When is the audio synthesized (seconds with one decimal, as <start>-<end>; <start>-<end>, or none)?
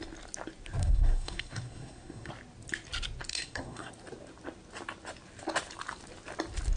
0.8-2.3; 3.3-3.9